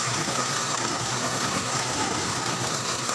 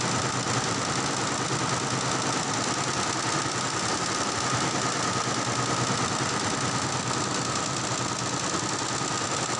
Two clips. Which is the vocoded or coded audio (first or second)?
first